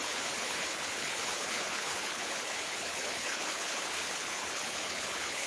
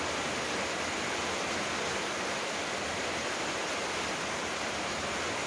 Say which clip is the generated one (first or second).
first